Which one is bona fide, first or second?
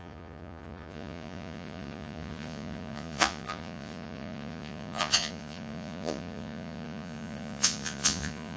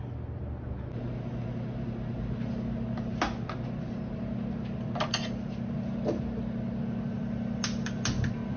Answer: second